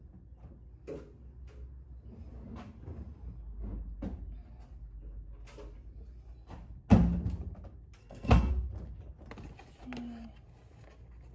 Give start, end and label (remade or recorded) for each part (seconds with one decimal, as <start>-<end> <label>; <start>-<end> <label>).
0.0-8.0 recorded; 8.0-8.5 remade; 8.5-11.3 recorded